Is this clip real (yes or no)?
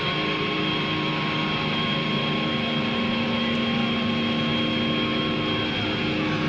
yes